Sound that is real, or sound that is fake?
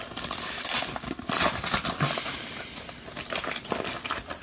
real